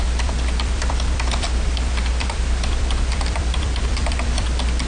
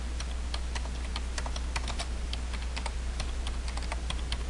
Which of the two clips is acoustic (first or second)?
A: second